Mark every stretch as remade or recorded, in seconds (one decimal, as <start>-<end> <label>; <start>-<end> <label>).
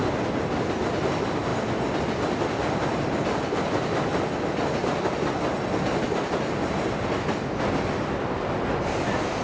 0.0-9.4 recorded